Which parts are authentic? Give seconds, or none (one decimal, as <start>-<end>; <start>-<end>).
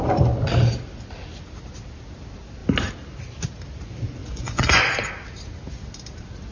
0.0-4.2; 4.8-6.5